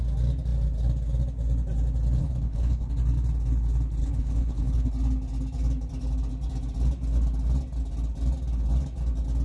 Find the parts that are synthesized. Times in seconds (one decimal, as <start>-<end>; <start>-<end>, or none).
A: 2.2-2.9; 4.0-4.9